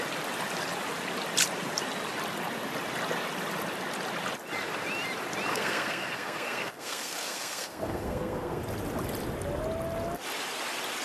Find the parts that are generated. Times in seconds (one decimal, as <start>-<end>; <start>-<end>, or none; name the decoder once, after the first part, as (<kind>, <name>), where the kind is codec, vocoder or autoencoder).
5.5-8.6 (codec, SNAC)